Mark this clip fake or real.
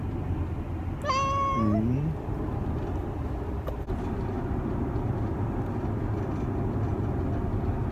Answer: real